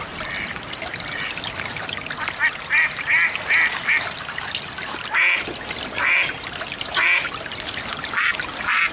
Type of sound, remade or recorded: recorded